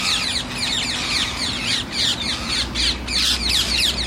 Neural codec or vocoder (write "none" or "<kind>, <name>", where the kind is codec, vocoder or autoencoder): none